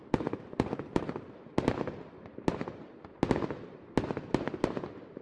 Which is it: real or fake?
real